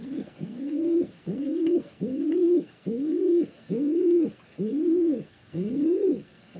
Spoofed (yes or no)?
yes